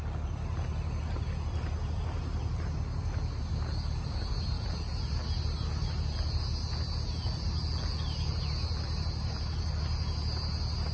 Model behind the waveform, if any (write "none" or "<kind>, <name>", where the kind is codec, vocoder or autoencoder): none